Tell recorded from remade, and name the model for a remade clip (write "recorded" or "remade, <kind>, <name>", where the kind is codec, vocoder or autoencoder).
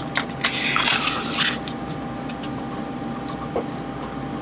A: recorded